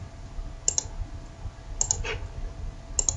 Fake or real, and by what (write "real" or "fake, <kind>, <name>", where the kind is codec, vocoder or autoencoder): real